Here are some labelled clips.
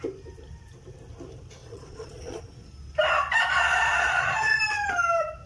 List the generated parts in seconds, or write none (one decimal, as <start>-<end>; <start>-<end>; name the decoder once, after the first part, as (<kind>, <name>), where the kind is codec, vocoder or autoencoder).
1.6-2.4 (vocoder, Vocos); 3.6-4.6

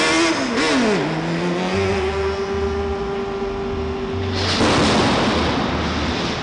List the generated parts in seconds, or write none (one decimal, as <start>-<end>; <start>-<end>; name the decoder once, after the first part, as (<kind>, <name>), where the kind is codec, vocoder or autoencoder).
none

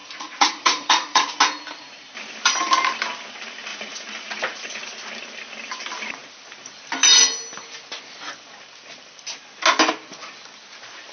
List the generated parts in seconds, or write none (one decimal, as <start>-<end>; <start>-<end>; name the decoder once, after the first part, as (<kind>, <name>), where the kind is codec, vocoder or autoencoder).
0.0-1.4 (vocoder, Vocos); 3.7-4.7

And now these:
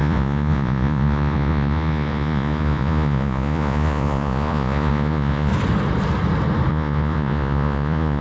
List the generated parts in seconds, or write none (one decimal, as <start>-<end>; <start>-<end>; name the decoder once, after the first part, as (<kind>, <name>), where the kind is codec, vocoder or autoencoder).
0.0-5.5 (vocoder, Vocos); 6.7-8.2

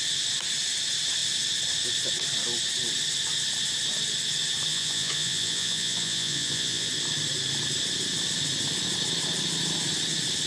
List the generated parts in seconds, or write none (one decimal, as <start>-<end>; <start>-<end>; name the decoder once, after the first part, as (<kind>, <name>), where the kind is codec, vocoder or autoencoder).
4.7-6.9 (vocoder, Vocos)

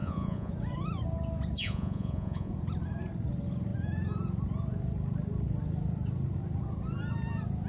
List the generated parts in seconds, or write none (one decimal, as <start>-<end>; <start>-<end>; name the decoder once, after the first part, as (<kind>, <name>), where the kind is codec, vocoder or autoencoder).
0.0-0.5 (vocoder, Vocos); 1.6-2.5

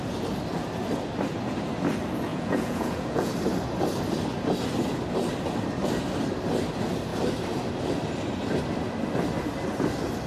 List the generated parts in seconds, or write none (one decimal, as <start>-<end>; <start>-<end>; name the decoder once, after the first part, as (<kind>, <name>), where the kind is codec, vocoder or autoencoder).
2.3-3.3 (vocoder, Vocos)

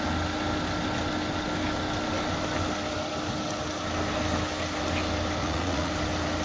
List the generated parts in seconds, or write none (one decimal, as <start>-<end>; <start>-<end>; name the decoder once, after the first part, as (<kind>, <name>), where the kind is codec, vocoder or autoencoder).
5.4-5.9 (vocoder, Vocos)